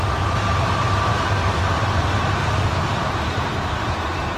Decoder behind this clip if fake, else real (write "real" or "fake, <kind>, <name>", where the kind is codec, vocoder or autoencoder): real